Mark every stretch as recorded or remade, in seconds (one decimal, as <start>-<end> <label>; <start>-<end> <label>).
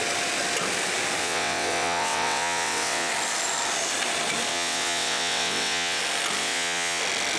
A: 0.0-1.2 recorded; 1.2-3.1 remade; 3.1-4.5 recorded; 4.5-6.0 remade; 6.0-6.4 recorded; 6.4-7.0 remade; 7.0-7.4 recorded